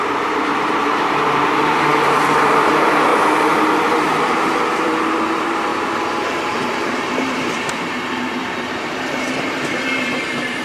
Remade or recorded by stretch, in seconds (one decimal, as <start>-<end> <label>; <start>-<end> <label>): 0.0-5.7 remade; 5.7-6.4 recorded; 6.4-10.6 remade